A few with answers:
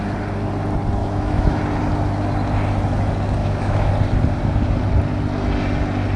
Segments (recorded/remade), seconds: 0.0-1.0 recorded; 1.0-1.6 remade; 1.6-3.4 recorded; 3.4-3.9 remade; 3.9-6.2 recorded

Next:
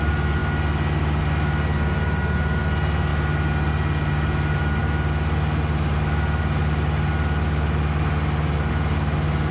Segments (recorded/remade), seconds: 0.0-9.5 recorded